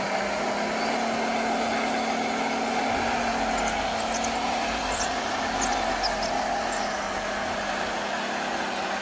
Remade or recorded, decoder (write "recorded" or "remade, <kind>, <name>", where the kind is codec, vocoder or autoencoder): recorded